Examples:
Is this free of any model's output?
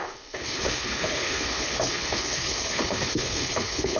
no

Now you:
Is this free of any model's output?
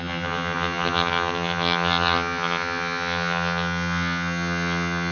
no